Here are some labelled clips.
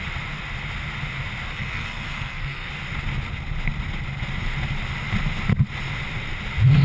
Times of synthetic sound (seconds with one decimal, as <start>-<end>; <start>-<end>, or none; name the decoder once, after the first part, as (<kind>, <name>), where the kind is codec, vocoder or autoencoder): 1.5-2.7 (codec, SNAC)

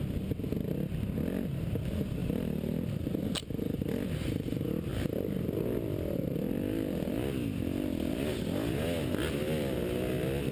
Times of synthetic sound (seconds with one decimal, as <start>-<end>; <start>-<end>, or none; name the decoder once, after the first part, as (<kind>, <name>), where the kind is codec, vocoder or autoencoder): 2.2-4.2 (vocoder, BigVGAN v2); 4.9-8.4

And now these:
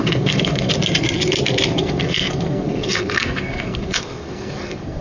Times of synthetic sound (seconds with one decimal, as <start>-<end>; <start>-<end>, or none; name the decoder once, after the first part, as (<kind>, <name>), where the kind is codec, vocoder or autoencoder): 0.0-0.7 (codec, SNAC); 1.7-5.0

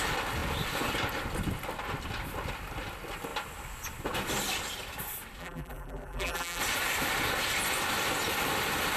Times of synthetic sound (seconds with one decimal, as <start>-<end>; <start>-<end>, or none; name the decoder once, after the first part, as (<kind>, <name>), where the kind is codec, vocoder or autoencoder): 5.4-6.6 (vocoder, BigVGAN v2)

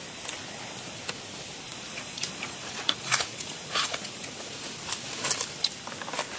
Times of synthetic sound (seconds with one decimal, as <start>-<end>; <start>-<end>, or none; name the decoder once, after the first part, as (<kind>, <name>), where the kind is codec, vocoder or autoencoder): 1.9-4.7 (vocoder, Vocos)